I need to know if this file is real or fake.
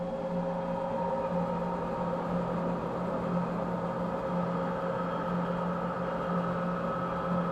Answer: real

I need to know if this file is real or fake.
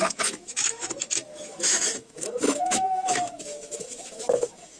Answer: fake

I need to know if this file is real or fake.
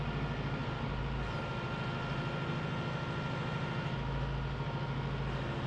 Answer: real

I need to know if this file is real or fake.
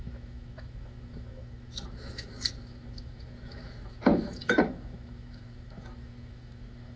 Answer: fake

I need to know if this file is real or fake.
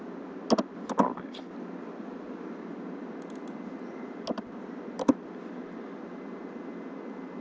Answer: real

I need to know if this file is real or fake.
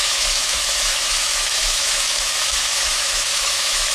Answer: fake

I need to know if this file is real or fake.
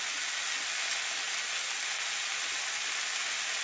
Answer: real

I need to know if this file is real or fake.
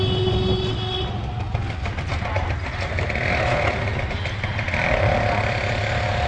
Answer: real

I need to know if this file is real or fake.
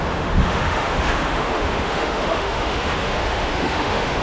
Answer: fake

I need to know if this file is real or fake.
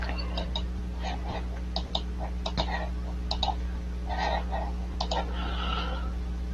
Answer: real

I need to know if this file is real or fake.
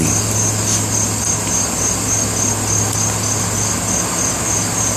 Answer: real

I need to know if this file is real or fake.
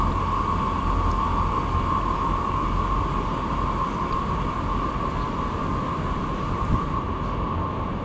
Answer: real